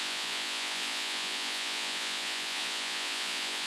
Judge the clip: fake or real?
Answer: fake